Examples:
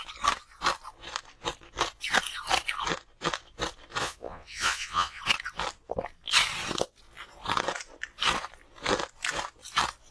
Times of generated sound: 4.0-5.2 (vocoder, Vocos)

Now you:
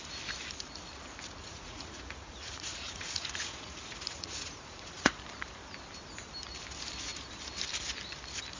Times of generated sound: 1.4-5.2 (vocoder, Vocos)

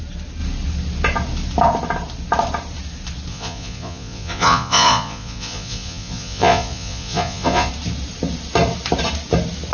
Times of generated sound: 3.3-7.7 (vocoder, Vocos)